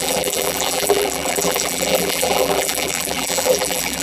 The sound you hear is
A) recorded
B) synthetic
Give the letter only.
B